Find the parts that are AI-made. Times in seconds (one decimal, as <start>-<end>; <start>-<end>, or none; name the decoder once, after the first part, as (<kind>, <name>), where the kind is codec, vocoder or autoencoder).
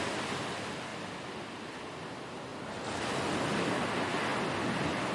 0.9-1.8 (vocoder, BigVGAN v2); 2.5-3.7; 4.3-5.1